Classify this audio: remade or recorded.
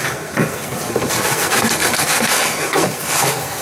remade